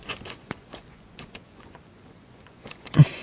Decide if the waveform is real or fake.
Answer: fake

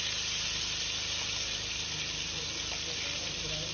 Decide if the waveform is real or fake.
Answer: real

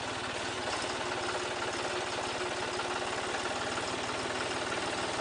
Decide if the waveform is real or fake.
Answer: real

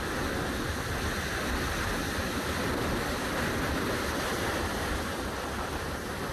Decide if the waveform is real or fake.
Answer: real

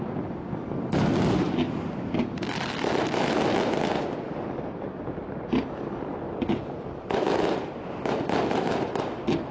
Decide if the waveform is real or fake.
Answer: real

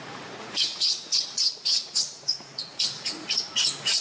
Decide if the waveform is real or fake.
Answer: fake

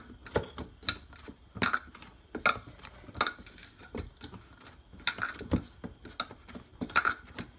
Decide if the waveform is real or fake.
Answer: real